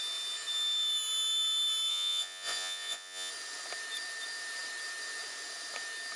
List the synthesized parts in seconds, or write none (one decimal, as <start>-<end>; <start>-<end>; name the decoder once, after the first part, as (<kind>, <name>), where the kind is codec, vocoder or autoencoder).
1.9-3.3 (vocoder, Vocos)